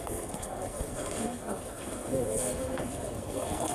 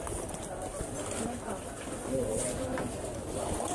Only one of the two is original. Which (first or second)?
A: second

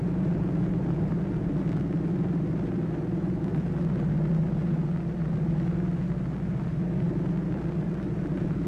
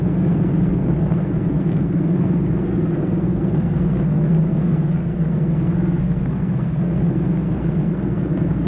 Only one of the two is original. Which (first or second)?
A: first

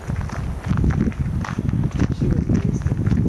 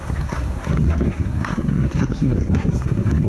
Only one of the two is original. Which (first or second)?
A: first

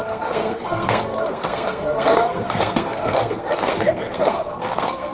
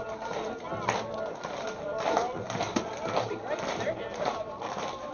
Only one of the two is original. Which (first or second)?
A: second